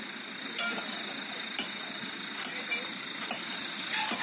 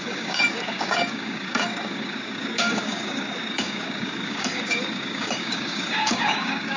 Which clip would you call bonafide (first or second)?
first